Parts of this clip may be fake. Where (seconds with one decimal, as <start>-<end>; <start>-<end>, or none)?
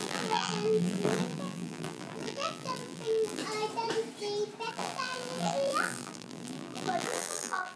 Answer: 0.0-3.4; 4.7-7.8